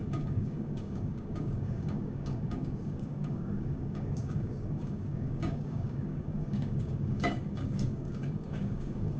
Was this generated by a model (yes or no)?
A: yes